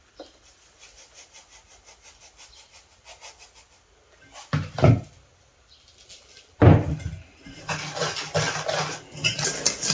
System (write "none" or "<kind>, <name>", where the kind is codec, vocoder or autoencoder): none